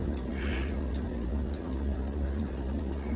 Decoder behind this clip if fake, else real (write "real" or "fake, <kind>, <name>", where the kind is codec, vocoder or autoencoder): fake, vocoder, Vocos